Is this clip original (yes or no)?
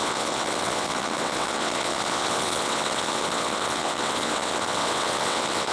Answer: no